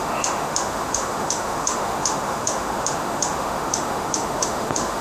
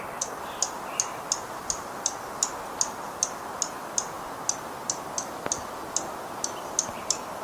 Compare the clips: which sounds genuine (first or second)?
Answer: second